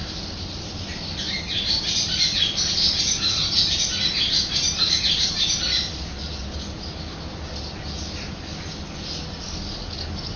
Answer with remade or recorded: recorded